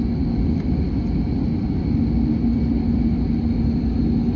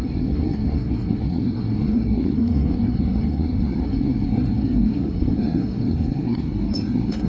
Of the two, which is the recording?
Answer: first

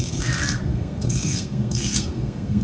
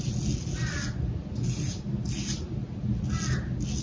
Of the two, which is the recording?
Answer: second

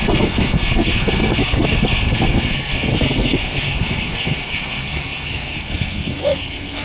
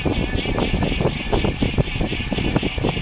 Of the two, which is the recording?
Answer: second